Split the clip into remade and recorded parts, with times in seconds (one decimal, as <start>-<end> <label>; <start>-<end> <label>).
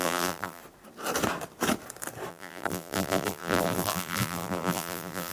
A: 0.0-0.6 remade; 0.6-2.3 recorded; 2.3-5.3 remade